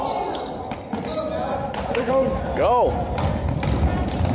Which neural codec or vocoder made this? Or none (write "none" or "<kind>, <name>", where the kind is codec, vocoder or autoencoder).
none